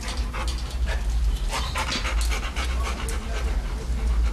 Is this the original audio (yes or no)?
yes